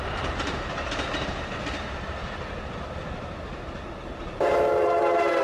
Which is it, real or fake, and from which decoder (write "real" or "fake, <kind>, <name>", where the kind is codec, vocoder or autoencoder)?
fake, vocoder, BigVGAN v2